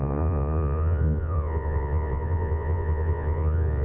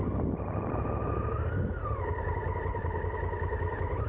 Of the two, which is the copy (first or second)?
first